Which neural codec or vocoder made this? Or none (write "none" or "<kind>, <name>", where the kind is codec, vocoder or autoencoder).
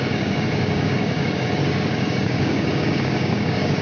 codec, DAC